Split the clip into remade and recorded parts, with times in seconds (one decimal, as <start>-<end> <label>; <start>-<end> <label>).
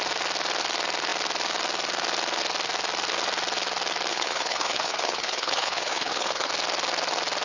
0.0-4.1 recorded; 4.1-6.5 remade; 6.5-7.4 recorded